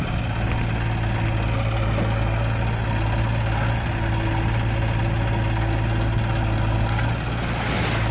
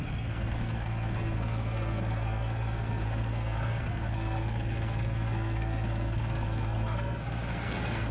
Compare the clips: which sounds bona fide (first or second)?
first